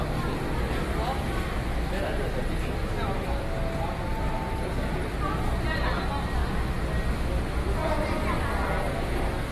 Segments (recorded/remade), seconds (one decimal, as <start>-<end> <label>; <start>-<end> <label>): 0.0-2.8 recorded; 2.8-3.4 remade; 3.4-9.5 recorded